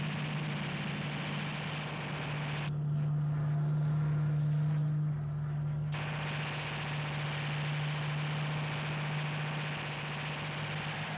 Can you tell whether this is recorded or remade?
recorded